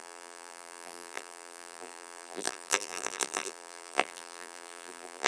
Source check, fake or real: fake